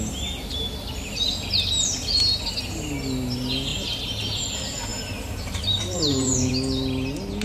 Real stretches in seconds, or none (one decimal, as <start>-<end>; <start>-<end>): 0.0-3.7; 4.5-4.9; 6.5-7.4